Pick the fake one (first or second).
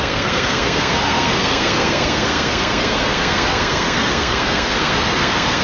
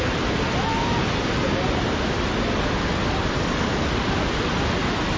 first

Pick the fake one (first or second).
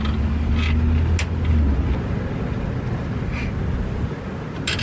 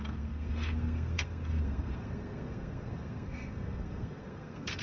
second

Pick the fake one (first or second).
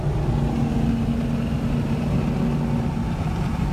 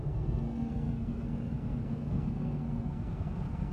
second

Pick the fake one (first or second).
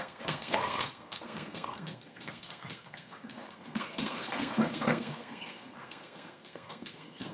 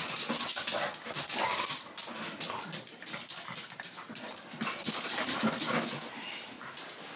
first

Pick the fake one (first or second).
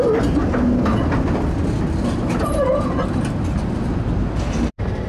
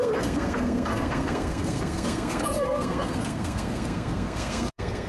second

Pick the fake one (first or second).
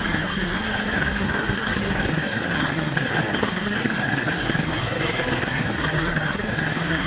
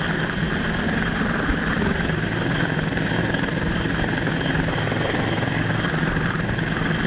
first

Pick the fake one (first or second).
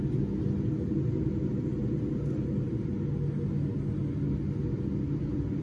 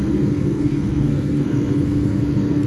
second